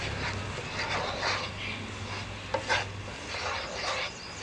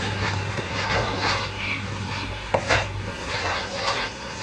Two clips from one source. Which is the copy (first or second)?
second